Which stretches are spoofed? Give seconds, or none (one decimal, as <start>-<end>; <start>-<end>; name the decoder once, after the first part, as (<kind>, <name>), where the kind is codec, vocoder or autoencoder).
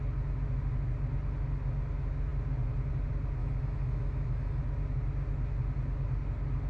3.4-4.6 (autoencoder, DAC-VAE)